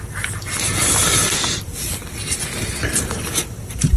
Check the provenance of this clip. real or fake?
real